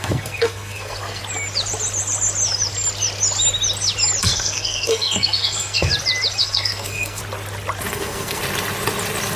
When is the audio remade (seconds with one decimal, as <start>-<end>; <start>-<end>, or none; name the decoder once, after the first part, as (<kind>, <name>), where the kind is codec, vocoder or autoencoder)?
0.0-1.2 (codec, SNAC); 4.2-5.9; 6.4-7.2; 7.9-8.4